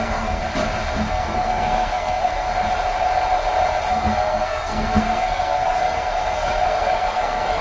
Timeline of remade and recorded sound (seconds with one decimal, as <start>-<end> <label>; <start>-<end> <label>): 0.0-0.4 remade; 0.4-1.1 recorded; 1.1-2.5 remade; 2.5-3.9 recorded; 3.9-7.6 remade